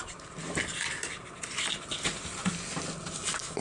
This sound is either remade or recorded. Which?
recorded